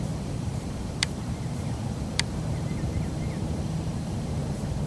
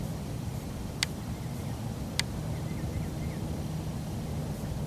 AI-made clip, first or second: first